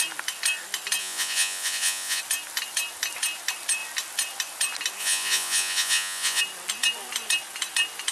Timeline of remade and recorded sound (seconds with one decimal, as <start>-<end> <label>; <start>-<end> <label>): 0.0-1.0 recorded; 1.0-2.2 remade; 2.2-5.0 recorded; 5.0-6.4 remade; 6.4-8.1 recorded